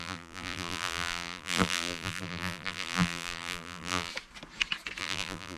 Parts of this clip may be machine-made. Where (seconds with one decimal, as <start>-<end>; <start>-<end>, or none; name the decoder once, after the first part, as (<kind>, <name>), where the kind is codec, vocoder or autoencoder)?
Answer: 0.0-4.1 (vocoder, BigVGAN v2); 5.0-5.6